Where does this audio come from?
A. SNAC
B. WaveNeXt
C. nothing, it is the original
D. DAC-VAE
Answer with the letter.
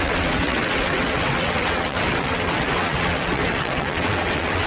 B